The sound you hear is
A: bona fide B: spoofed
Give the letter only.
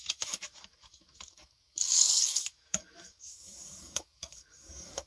B